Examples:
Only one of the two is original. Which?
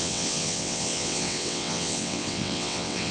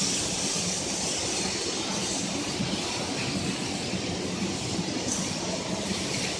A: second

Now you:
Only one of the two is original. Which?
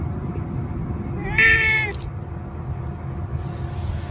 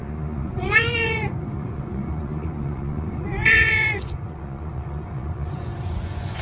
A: first